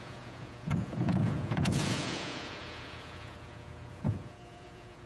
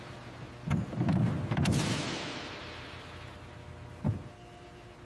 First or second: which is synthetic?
first